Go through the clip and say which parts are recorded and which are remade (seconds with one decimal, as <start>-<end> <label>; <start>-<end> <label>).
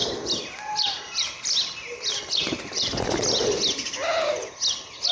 0.0-2.9 remade; 2.9-5.1 recorded